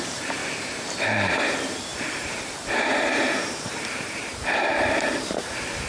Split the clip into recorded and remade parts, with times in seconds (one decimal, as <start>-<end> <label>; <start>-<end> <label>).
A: 0.0-0.4 remade; 0.4-1.3 recorded; 1.3-5.9 remade